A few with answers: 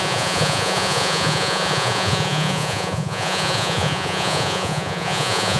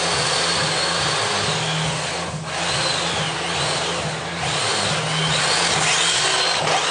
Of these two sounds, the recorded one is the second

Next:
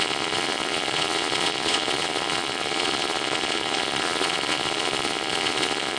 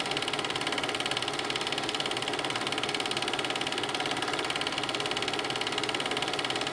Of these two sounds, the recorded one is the second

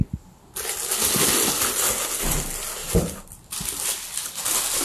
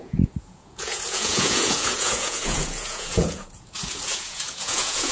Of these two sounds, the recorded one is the first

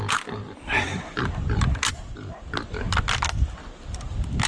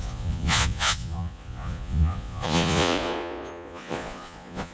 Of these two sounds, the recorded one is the first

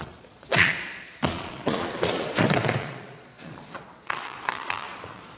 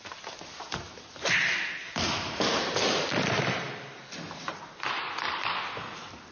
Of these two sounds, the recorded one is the second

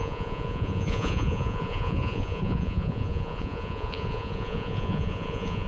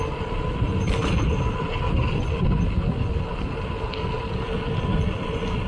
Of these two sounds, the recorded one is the second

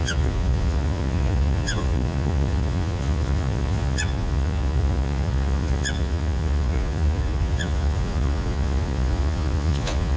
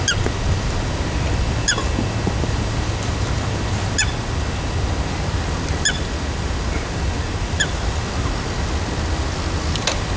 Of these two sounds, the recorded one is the second